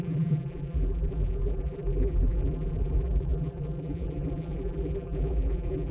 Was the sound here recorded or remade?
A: remade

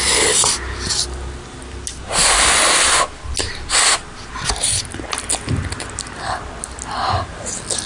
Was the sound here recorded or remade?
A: recorded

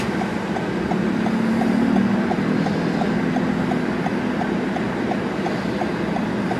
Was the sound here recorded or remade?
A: recorded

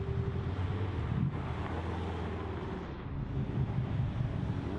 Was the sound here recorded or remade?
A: recorded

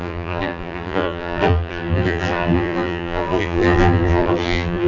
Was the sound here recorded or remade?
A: remade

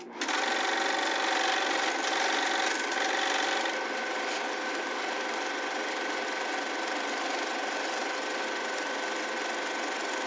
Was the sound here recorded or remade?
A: recorded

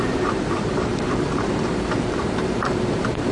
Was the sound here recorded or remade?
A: remade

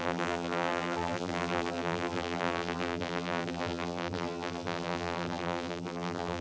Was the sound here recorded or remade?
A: remade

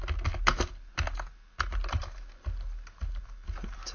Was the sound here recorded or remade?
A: recorded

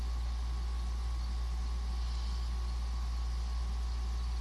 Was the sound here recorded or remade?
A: recorded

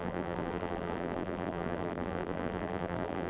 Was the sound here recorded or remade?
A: remade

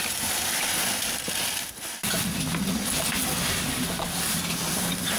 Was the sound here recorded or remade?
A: remade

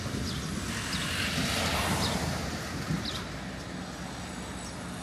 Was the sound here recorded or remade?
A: recorded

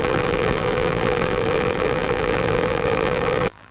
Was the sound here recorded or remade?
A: remade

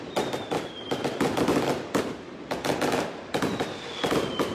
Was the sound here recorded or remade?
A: recorded